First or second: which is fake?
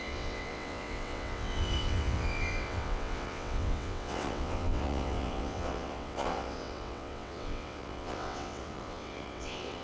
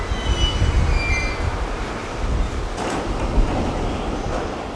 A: first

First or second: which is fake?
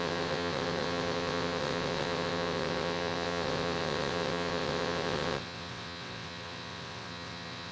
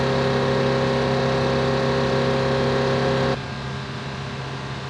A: first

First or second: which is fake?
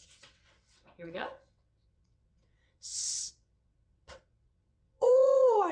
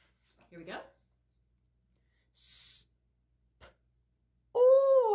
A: first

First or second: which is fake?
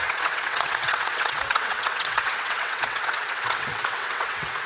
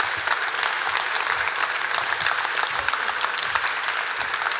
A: first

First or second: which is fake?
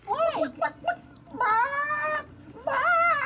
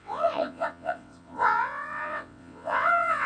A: second